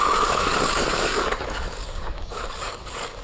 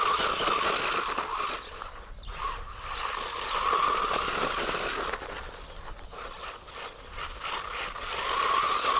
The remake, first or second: first